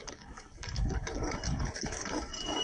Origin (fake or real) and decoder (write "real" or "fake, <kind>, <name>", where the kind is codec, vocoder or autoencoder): fake, codec, DAC